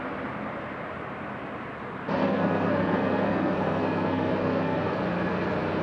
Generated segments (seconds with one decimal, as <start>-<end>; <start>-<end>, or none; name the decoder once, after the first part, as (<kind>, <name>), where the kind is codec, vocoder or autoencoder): 2.2-5.0 (codec, SNAC)

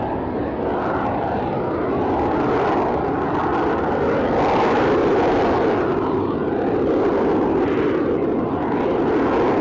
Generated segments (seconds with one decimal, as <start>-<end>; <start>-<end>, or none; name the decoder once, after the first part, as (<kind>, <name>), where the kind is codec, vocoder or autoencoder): none

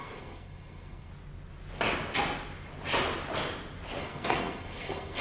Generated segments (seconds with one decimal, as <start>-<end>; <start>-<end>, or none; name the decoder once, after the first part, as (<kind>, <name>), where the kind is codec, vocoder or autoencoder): 0.0-1.1 (codec, SNAC); 4.0-5.2

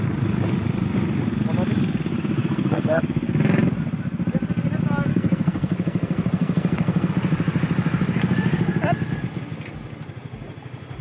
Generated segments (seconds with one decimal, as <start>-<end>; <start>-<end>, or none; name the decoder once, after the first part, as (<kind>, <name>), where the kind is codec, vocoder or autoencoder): 2.4-3.0 (codec, SNAC); 5.1-7.1

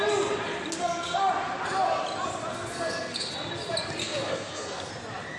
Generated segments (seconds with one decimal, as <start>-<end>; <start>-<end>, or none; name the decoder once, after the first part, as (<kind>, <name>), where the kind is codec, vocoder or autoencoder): 0.8-1.3 (codec, SNAC); 2.5-3.3; 4.0-4.9

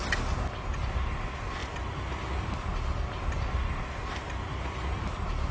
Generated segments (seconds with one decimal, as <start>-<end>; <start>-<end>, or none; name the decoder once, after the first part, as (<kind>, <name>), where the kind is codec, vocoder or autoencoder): none

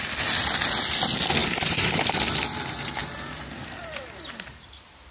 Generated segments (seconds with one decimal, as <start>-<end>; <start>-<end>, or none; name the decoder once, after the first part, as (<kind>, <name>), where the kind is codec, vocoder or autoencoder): none

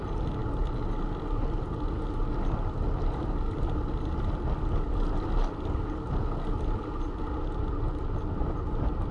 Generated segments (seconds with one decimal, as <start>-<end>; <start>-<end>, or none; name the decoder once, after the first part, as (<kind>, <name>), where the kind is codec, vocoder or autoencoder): none